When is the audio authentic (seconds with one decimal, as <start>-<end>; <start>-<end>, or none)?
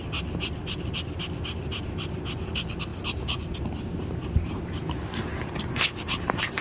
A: 2.9-4.1; 5.3-5.9